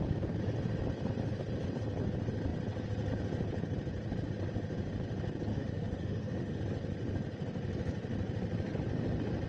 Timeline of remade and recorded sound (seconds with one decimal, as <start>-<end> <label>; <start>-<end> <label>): 0.0-5.5 recorded; 5.5-6.6 remade; 6.6-9.5 recorded